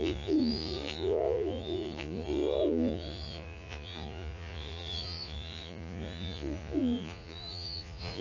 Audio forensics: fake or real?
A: fake